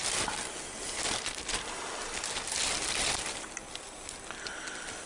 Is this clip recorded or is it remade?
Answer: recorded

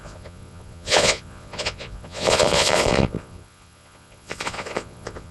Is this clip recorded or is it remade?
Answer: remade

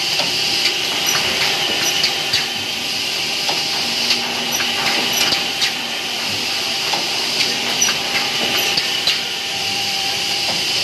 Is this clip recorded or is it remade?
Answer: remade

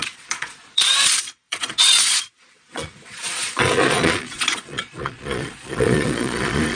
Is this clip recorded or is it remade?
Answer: remade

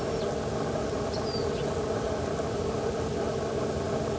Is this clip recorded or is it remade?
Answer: recorded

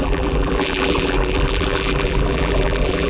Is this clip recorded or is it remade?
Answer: remade